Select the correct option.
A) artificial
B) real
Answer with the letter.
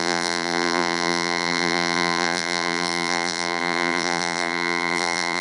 A